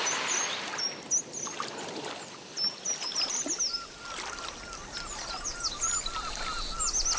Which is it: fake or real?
real